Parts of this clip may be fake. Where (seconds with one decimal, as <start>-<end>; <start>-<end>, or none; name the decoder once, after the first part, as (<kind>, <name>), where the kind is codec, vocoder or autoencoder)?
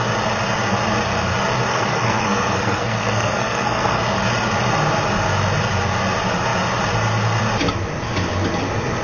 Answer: 1.7-4.0 (codec, SNAC)